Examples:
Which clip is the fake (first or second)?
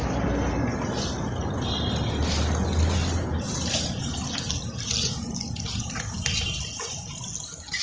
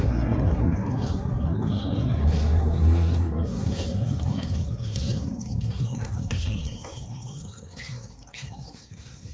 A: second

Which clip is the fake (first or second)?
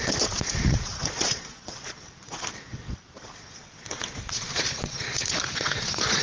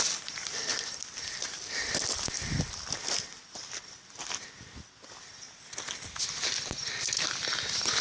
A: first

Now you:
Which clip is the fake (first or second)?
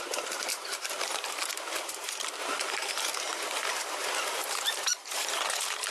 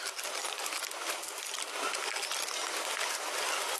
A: first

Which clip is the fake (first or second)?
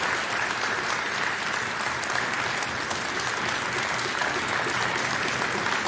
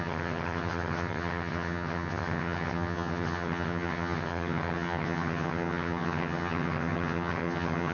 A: second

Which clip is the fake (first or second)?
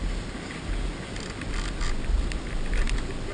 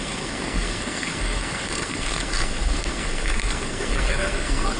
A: second